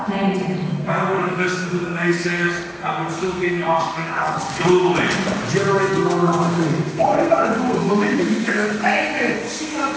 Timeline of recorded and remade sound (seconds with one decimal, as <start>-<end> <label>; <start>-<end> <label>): 0.0-0.7 recorded; 0.7-4.8 remade; 4.8-5.8 recorded; 5.8-10.0 remade